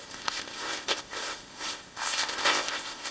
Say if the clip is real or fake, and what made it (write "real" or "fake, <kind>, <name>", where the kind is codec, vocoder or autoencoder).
fake, codec, ZipCodec